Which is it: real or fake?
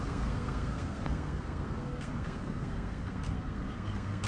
fake